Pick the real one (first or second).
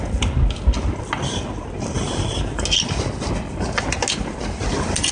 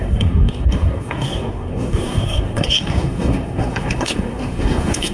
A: first